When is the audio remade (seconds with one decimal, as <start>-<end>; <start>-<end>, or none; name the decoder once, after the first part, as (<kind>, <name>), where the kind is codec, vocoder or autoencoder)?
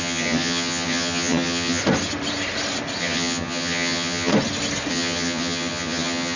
0.0-1.8 (vocoder, HiFi-GAN); 3.0-4.3; 4.9-6.4